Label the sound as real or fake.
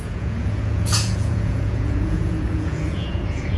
fake